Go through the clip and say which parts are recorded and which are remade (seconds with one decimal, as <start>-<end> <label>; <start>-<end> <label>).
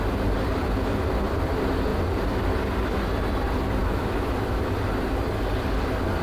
0.0-3.8 recorded; 3.8-4.6 remade; 4.6-6.2 recorded